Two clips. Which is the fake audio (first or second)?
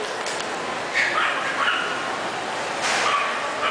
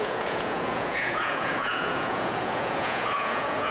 second